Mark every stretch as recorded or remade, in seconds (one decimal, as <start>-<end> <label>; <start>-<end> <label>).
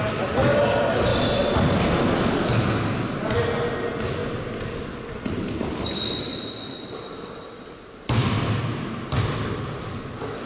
0.0-10.5 recorded